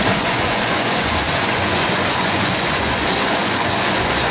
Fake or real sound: fake